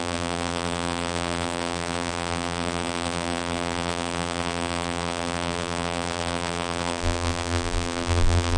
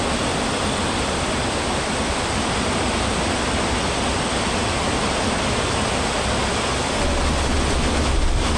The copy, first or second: first